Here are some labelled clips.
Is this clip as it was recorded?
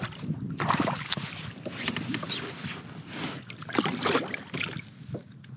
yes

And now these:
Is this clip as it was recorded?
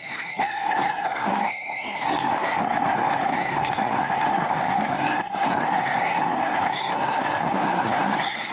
no